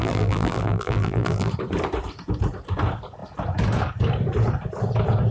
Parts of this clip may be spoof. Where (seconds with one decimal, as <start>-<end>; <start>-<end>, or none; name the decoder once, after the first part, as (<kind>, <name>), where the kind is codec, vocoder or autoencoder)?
0.0-1.5 (vocoder, BigVGAN v2)